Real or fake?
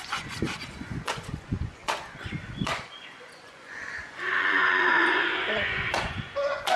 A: fake